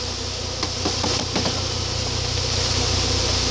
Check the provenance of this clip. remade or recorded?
recorded